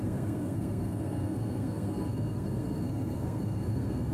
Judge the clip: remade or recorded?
remade